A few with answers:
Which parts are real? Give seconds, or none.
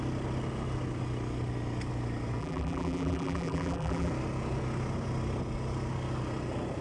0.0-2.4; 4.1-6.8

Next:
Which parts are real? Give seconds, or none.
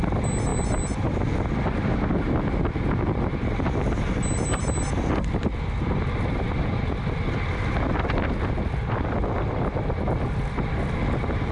0.0-11.5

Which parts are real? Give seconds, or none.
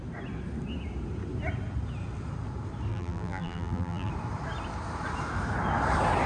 0.0-2.9; 4.1-6.3